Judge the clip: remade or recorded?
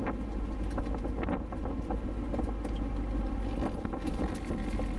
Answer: recorded